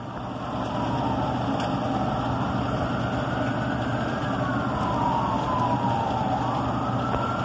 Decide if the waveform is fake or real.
real